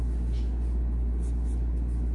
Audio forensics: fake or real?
real